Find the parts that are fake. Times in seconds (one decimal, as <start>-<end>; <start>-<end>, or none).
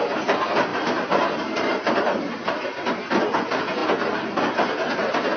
0.7-3.2